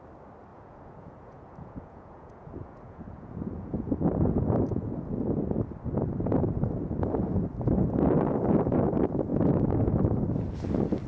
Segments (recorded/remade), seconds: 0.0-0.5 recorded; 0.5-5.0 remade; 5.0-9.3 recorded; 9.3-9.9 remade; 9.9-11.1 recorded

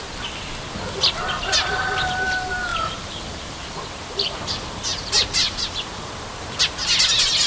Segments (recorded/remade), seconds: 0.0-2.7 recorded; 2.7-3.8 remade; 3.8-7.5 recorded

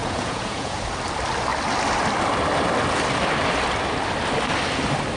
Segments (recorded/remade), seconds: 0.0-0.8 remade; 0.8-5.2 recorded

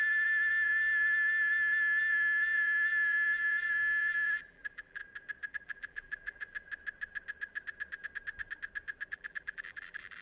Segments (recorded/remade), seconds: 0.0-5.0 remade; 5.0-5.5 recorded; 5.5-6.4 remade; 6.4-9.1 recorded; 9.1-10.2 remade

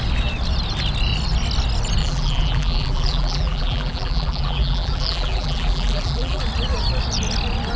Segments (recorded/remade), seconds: 0.0-2.0 recorded; 2.0-6.4 remade; 6.4-7.8 recorded

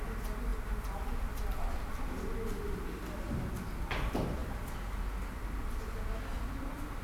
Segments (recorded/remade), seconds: 0.0-7.0 recorded